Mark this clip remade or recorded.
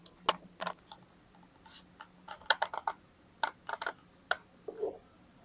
recorded